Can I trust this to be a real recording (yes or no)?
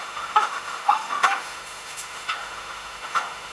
no